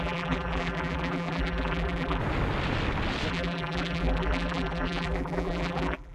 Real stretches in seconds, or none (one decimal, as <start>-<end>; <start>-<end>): 2.2-3.3